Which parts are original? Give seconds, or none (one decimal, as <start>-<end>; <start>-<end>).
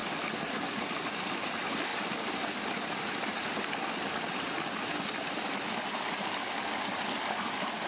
0.0-7.9